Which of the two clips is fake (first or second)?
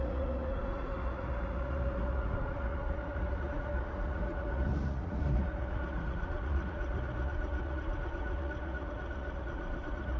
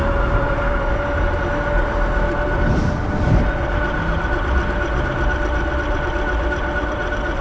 first